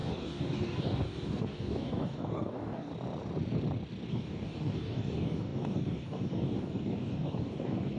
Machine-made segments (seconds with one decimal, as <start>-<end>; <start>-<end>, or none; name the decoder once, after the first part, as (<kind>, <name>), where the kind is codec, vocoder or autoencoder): 0.0-2.9 (codec, DAC); 4.1-8.0